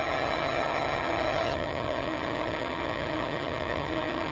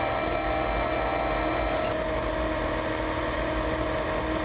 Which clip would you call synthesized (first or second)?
first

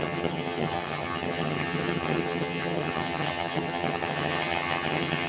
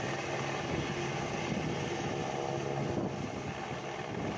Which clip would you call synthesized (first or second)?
first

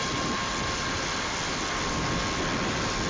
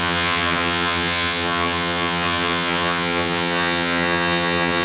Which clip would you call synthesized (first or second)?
second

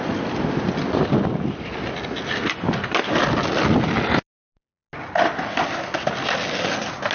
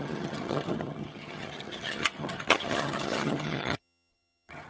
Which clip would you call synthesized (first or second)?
second